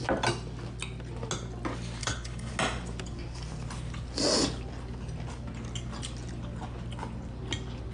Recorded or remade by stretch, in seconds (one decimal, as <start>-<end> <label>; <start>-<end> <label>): 0.0-2.0 recorded; 2.0-2.5 remade; 2.5-7.9 recorded